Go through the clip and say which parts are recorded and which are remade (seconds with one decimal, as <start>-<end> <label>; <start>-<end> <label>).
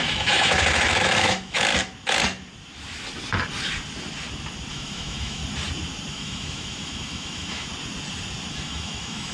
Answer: 0.0-1.7 remade; 1.7-4.7 recorded; 4.7-5.4 remade; 5.4-6.1 recorded; 6.1-7.7 remade; 7.7-8.5 recorded; 8.5-9.3 remade